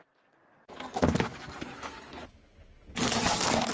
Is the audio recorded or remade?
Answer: recorded